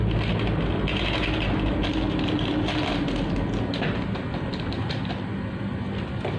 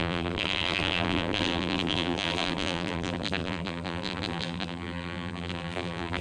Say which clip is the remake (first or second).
second